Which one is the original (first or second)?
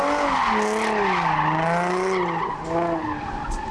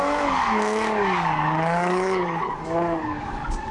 first